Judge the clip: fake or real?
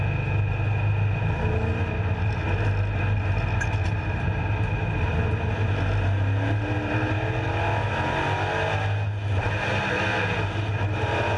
real